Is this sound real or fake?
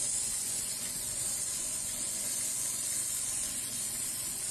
fake